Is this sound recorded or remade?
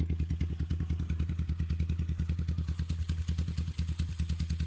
recorded